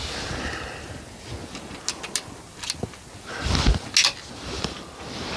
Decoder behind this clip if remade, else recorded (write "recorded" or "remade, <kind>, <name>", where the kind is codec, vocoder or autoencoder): recorded